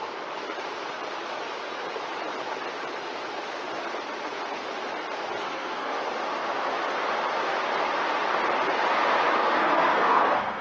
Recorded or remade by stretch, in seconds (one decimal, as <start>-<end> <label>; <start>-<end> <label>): 0.0-5.4 recorded; 5.4-6.0 remade; 6.0-9.4 recorded; 9.4-10.6 remade